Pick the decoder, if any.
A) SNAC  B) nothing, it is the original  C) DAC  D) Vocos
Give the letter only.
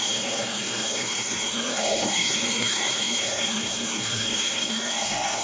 A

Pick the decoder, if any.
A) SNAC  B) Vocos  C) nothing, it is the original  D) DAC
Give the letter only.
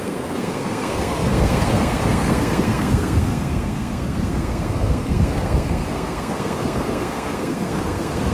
A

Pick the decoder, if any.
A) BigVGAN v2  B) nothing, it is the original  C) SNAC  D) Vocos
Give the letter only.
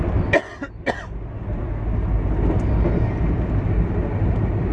B